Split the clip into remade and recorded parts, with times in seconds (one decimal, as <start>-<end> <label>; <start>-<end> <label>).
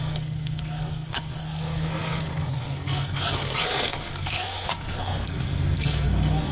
0.0-6.5 remade